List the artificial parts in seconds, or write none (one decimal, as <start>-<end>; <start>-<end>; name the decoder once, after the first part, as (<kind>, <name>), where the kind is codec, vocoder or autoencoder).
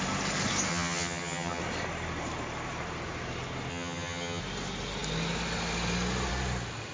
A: 0.7-1.6 (vocoder, HiFi-GAN); 3.7-4.4